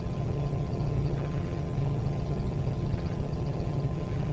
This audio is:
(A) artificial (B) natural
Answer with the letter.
A